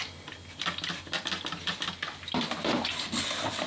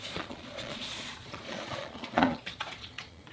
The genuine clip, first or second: first